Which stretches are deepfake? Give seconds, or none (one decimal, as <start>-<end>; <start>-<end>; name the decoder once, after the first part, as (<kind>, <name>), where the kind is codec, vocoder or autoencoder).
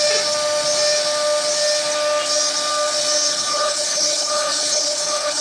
3.3-5.4 (codec, HILCodec)